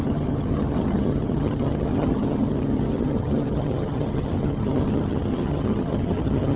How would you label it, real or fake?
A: fake